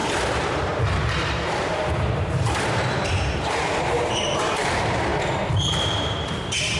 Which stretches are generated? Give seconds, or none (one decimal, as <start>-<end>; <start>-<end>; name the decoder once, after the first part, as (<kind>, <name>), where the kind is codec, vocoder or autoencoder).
0.0-5.1 (vocoder, BigVGAN v2); 6.1-6.8